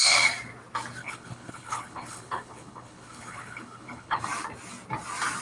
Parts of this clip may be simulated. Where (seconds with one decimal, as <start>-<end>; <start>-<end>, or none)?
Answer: 1.0-4.2